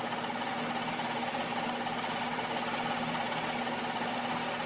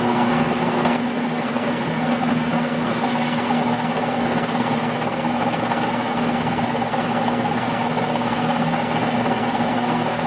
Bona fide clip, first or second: first